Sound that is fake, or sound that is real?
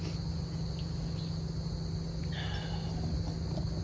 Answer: real